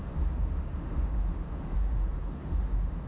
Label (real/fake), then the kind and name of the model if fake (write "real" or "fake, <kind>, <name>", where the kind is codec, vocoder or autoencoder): fake, autoencoder, DAC-VAE